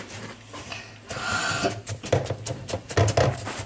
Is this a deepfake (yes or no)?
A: no